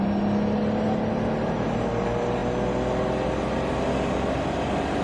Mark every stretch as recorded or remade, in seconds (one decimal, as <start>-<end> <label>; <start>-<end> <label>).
0.0-5.0 recorded